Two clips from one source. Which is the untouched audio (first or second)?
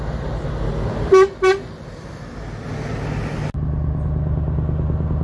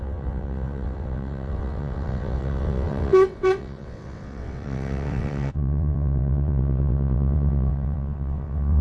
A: first